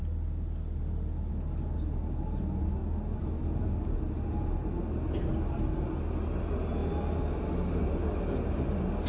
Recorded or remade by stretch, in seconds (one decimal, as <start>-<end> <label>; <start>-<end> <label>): 0.0-9.1 recorded